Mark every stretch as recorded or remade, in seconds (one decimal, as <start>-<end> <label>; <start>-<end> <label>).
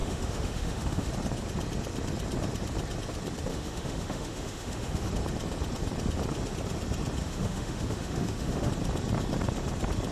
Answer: 0.0-1.1 remade; 1.1-3.5 recorded; 3.5-5.1 remade; 5.1-7.2 recorded; 7.2-8.7 remade; 8.7-10.1 recorded